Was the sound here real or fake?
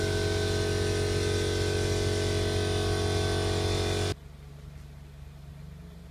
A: real